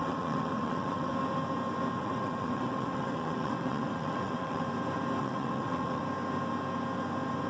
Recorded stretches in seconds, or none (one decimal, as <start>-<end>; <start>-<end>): 1.1-2.0; 4.6-5.2; 6.0-7.5